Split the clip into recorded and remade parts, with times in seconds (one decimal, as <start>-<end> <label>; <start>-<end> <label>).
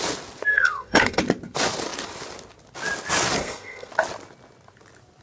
0.0-0.5 recorded; 0.5-1.2 remade; 1.2-3.4 recorded; 3.4-3.9 remade; 3.9-5.2 recorded